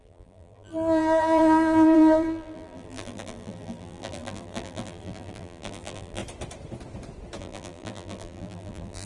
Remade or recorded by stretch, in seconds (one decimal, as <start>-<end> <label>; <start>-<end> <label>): 0.0-6.2 remade; 6.2-7.4 recorded; 7.4-9.1 remade